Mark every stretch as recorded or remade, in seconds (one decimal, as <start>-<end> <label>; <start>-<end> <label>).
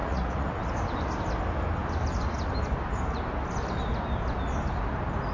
0.0-0.6 remade; 0.6-5.3 recorded